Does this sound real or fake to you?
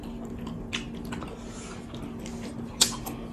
real